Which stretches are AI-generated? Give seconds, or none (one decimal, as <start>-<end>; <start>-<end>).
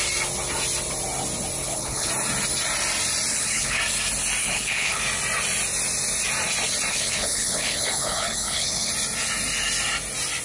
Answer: 1.6-2.1; 3.3-3.8; 4.4-5.0; 6.9-8.9